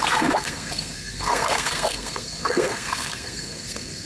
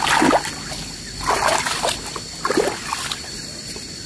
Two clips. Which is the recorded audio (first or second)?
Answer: second